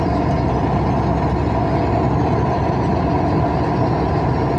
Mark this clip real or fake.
real